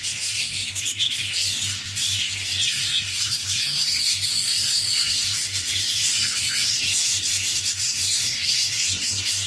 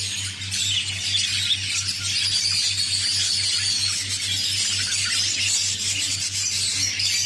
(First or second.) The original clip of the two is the second